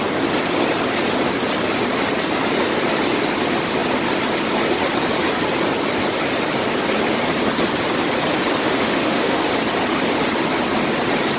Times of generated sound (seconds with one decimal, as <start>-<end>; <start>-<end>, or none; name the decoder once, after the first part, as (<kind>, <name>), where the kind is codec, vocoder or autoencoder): 8.6-9.5 (autoencoder, DAC-VAE)